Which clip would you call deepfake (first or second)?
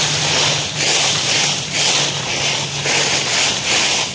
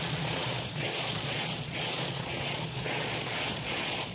second